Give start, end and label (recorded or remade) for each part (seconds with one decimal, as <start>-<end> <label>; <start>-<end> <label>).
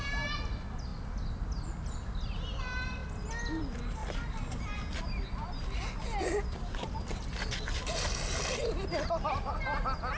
0.0-4.0 recorded; 4.0-4.6 remade; 4.6-10.2 recorded